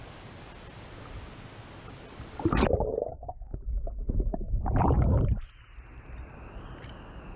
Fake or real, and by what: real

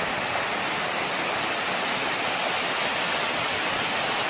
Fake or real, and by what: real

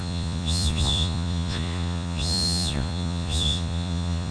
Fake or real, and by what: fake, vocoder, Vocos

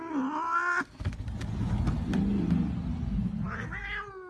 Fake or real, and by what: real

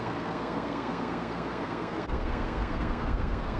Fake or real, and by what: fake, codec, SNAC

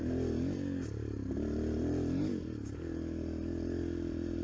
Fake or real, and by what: real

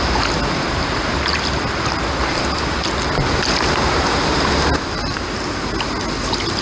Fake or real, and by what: real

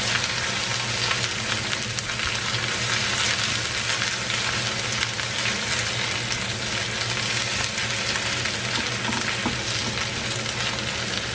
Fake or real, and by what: real